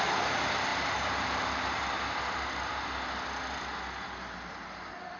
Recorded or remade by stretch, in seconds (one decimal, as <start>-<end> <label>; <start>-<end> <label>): 0.0-5.2 recorded